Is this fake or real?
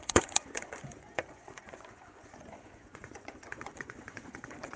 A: fake